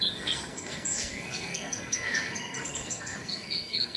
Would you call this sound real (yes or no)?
no